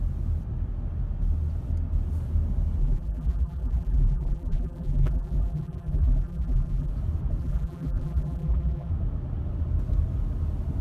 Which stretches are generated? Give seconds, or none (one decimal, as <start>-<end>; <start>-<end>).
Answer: 2.8-6.9; 7.4-8.9